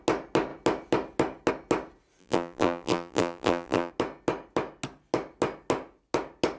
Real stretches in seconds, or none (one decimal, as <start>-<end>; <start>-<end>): 0.0-2.2; 3.9-6.6